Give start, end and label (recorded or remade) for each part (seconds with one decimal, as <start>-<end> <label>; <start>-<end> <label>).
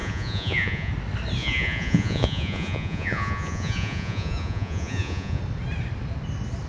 0.0-0.9 remade; 0.9-1.4 recorded; 1.4-5.4 remade; 5.4-6.7 recorded